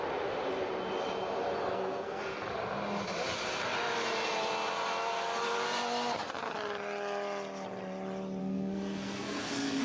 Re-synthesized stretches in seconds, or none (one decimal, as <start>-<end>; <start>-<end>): 1.7-2.2; 8.4-9.8